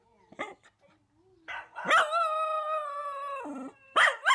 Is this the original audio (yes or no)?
yes